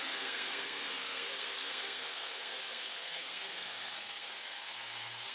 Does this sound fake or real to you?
fake